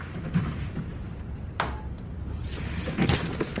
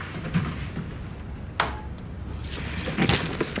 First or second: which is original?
second